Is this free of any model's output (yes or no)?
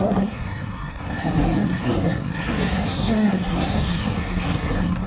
no